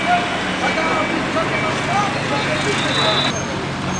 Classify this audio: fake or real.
real